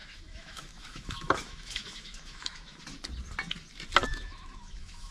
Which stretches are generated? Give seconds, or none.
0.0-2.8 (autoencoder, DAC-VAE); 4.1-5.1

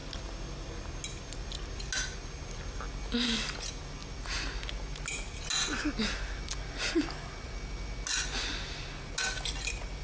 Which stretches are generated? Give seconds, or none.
none

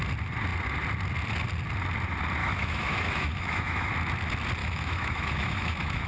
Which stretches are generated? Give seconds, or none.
2.4-3.9 (autoencoder, DAC-VAE); 4.6-6.1

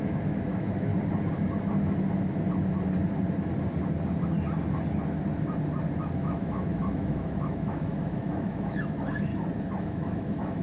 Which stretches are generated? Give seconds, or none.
0.0-0.9 (autoencoder, DAC-VAE); 6.1-9.3; 9.8-10.6

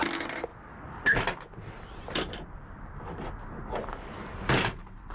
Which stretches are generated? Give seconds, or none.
none